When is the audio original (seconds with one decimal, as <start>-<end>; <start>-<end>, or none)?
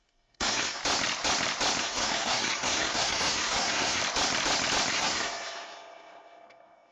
0.8-1.8; 4.0-4.9